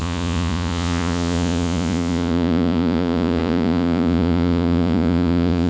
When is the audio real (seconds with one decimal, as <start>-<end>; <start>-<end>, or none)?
none